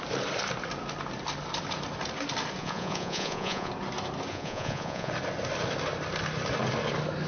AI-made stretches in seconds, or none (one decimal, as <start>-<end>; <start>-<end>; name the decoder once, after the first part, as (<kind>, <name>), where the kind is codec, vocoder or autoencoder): 2.6-3.7 (vocoder, Vocos); 4.3-5.1